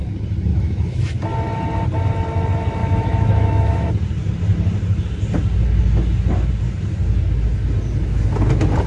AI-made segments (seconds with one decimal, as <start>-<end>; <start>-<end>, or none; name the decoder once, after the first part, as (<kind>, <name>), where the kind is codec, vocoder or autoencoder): 0.5-1.0 (autoencoder, DAC-VAE); 2.8-3.9